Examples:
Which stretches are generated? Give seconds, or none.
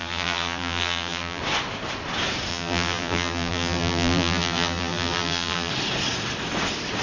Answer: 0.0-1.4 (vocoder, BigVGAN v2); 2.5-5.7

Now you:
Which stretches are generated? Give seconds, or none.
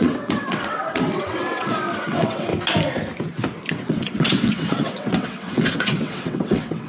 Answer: 0.0-2.5 (vocoder, WaveNeXt); 3.7-6.9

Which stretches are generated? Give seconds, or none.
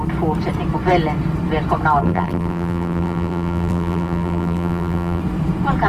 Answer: 2.0-5.2 (vocoder, BigVGAN v2)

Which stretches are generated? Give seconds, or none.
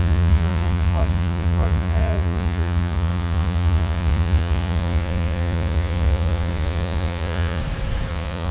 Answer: 0.0-7.6 (vocoder, Vocos); 8.1-8.5